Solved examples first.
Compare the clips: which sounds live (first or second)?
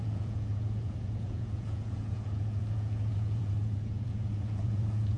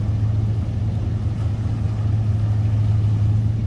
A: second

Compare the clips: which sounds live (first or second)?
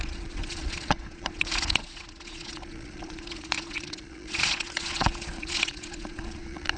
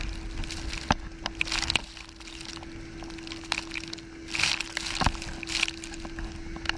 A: second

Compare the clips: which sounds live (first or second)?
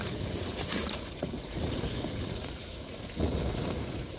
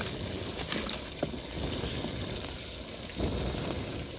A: second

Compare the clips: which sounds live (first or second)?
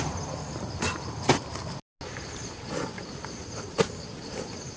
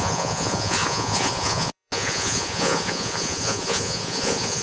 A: first